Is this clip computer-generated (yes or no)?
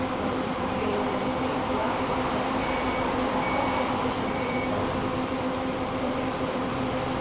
yes